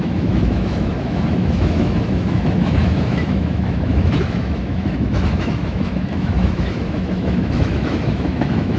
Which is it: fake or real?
fake